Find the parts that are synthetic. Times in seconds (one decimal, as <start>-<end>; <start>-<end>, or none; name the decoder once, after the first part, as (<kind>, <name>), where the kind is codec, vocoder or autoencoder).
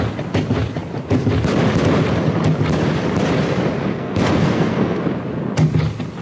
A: 3.9-5.0 (codec, SNAC)